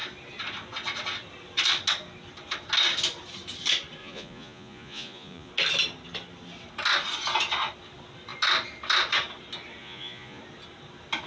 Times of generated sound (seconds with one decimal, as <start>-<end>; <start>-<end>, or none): 4.0-5.5; 9.8-10.4